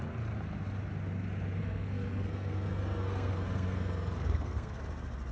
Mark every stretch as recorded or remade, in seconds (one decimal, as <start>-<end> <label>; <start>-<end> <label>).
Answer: 0.0-1.6 recorded; 1.6-4.8 remade; 4.8-5.3 recorded